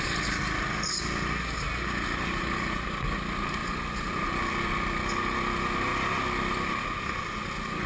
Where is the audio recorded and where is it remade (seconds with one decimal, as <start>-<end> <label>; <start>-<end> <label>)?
0.0-3.6 recorded; 3.6-4.6 remade; 4.6-7.9 recorded

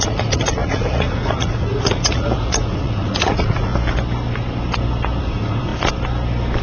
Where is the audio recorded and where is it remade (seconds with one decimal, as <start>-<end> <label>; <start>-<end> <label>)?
0.0-3.7 remade; 3.7-5.2 recorded; 5.2-5.7 remade; 5.7-6.6 recorded

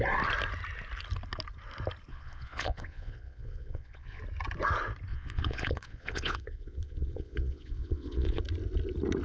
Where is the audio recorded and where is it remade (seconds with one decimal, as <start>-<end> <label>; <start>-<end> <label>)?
0.0-2.1 recorded; 2.1-4.2 remade; 4.2-5.1 recorded; 5.1-8.4 remade; 8.4-9.2 recorded

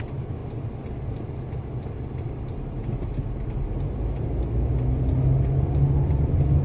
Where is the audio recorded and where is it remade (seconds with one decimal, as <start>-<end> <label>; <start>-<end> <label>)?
0.0-6.6 recorded

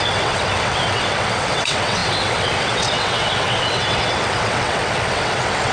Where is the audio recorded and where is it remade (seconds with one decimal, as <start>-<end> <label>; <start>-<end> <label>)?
0.0-5.7 remade

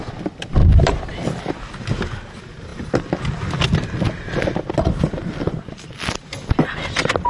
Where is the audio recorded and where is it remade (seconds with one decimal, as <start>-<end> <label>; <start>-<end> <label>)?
0.0-0.6 recorded; 0.6-1.5 remade; 1.5-7.3 recorded

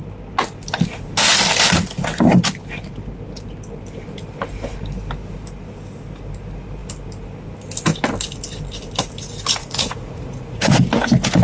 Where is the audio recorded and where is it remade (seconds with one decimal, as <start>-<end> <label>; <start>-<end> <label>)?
0.0-9.6 recorded; 9.6-10.8 remade; 10.8-11.4 recorded